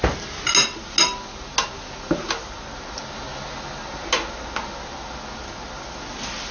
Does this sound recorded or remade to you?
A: recorded